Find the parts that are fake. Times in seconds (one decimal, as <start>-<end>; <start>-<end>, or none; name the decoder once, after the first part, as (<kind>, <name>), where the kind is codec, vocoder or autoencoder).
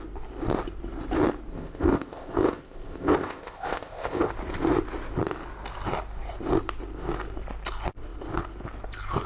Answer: 1.5-4.3 (codec, ZipCodec)